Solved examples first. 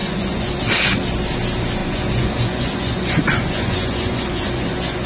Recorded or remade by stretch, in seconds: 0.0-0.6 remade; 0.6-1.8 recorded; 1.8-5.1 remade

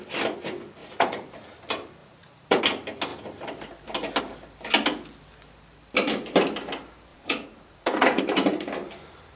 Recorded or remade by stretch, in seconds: 0.0-0.8 recorded; 0.8-1.3 remade; 1.3-2.0 recorded; 2.0-2.6 remade; 2.6-7.1 recorded; 7.1-8.2 remade; 8.2-9.4 recorded

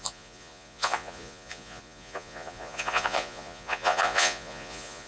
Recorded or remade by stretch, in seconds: 0.0-5.1 remade

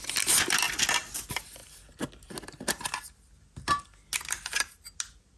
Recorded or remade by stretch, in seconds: 0.0-5.4 recorded

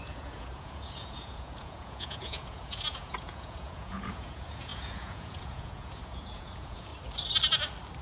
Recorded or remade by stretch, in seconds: 0.0-6.9 remade; 6.9-8.0 recorded

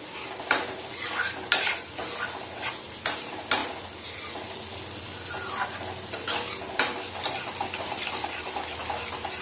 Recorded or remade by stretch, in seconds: 0.0-9.4 recorded